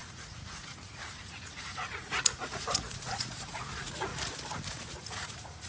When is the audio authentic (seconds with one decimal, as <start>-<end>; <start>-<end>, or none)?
4.1-4.7